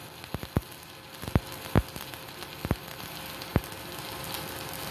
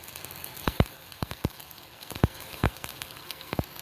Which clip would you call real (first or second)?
first